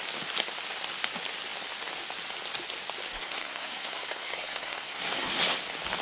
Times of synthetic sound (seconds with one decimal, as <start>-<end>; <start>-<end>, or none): 3.1-5.4

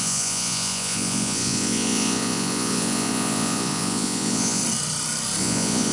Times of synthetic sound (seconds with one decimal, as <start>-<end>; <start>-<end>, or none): 0.0-4.6; 5.4-5.9

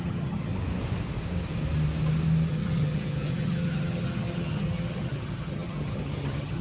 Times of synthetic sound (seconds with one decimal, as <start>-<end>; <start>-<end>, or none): 0.0-0.5; 2.5-6.6

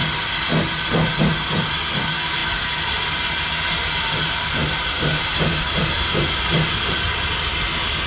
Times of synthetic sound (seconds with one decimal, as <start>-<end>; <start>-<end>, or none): 2.4-3.7; 4.6-6.4

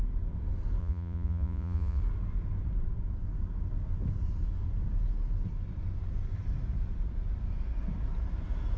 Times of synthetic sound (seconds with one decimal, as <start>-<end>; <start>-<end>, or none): 0.8-2.0